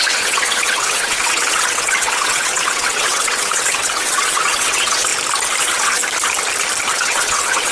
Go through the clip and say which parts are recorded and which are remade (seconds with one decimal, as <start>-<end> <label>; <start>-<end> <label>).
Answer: 0.0-5.1 remade; 5.1-5.6 recorded; 5.6-6.0 remade; 6.0-6.9 recorded; 6.9-7.7 remade